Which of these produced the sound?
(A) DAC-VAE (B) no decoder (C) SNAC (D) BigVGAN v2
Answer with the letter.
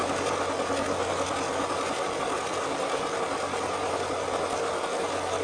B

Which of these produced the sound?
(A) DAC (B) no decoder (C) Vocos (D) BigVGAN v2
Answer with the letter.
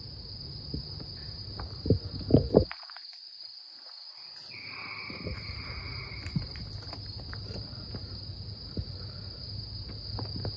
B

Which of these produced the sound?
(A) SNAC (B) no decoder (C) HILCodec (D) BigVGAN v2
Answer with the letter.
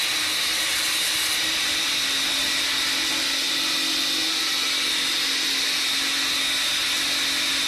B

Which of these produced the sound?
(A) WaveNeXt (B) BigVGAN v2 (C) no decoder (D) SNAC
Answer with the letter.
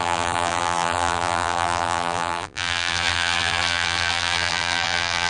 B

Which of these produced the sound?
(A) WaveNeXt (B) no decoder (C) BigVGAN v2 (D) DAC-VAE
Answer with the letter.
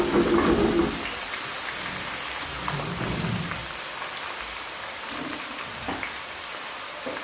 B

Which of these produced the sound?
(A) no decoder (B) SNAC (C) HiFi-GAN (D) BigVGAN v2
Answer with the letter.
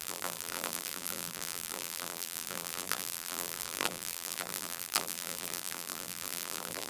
D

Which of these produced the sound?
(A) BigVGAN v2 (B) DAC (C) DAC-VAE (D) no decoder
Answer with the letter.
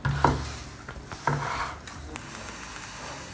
D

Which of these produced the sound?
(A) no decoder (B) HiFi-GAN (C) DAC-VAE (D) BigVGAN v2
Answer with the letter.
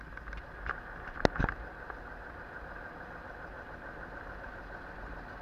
A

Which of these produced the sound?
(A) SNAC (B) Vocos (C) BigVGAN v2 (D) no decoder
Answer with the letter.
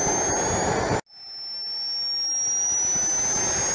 D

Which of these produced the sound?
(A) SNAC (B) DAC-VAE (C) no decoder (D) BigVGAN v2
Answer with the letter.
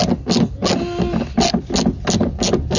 C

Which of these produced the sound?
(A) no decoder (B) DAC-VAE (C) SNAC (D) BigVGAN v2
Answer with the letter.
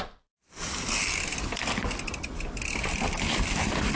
D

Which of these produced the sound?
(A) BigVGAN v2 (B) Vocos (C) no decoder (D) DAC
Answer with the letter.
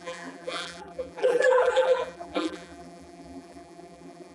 A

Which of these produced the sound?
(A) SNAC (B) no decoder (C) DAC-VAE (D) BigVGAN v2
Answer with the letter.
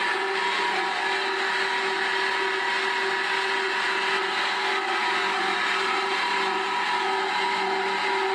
B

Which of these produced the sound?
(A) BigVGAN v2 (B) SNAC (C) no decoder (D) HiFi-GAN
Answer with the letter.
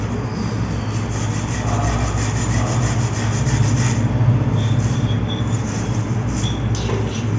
C